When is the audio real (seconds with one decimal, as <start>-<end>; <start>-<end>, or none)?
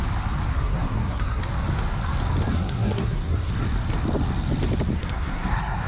0.0-0.5; 1.4-2.5; 3.5-5.0